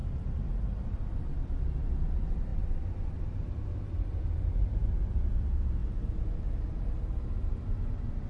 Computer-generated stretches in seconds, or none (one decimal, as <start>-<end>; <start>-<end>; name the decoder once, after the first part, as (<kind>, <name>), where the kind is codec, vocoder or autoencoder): 0.0-1.0 (vocoder, BigVGAN v2); 5.8-7.1

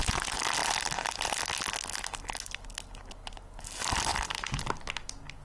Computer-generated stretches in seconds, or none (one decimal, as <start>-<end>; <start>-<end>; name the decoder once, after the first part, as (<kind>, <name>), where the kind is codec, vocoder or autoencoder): 0.6-1.4 (vocoder, BigVGAN v2)

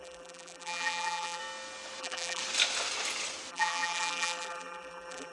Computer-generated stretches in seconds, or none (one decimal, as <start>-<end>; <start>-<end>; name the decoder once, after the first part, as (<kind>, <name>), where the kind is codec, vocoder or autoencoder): 0.0-1.4 (vocoder, BigVGAN v2); 2.0-2.4; 3.5-5.3

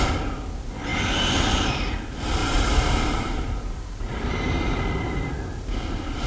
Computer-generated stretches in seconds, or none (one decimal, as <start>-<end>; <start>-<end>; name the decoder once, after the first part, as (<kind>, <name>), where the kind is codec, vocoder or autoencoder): 2.4-4.3 (vocoder, BigVGAN v2)

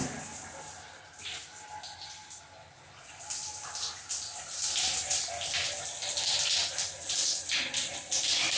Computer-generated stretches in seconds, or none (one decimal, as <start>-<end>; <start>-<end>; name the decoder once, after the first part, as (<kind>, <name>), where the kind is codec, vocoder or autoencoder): 0.8-2.2 (vocoder, BigVGAN v2); 4.1-5.6; 7.4-8.6

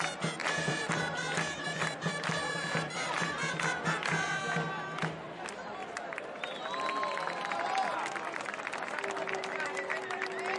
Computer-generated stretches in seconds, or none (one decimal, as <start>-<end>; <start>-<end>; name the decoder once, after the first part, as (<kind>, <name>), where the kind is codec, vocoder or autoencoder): 0.4-4.4 (vocoder, BigVGAN v2); 5.8-7.2

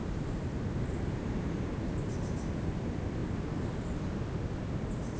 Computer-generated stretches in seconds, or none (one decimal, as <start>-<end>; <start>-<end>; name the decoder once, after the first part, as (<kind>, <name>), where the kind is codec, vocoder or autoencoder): 0.0-1.7 (vocoder, BigVGAN v2)

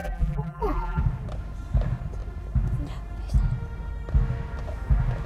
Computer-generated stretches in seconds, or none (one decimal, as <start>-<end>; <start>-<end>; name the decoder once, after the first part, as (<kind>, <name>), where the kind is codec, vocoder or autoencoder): 0.0-1.0 (vocoder, BigVGAN v2)